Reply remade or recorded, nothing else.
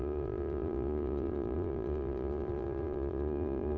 remade